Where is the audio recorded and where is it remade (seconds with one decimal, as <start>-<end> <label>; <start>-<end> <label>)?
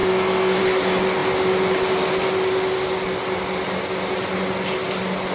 0.0-0.6 remade; 0.6-5.3 recorded